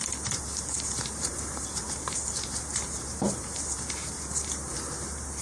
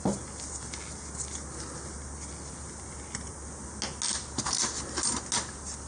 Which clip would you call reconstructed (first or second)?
first